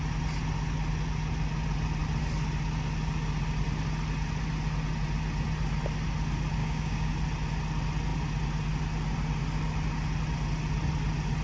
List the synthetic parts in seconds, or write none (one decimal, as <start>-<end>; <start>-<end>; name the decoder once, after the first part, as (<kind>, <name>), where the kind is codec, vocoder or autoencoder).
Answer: 6.6-7.1 (codec, DAC)